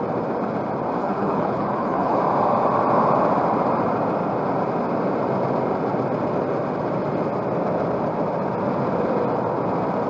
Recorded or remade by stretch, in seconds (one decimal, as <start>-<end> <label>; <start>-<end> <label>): 0.0-1.0 recorded; 1.0-2.2 remade; 2.2-10.1 recorded